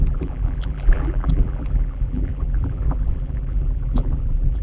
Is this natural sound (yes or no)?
no